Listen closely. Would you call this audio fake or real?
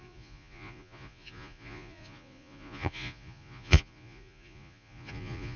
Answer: fake